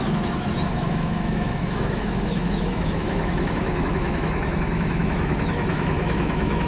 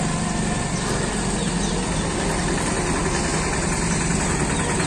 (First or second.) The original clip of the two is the second